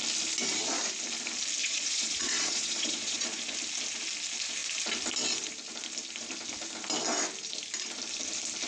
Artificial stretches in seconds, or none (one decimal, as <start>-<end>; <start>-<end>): 1.6-3.4